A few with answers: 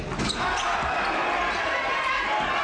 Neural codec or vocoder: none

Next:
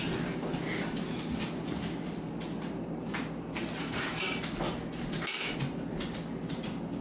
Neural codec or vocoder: none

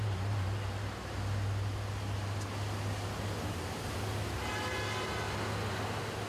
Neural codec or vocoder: none